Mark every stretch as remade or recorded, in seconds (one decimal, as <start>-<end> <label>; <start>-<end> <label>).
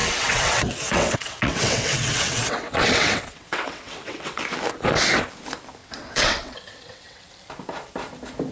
0.0-4.4 remade; 4.4-5.8 recorded; 5.8-7.3 remade; 7.3-8.5 recorded